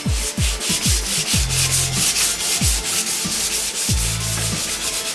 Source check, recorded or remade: recorded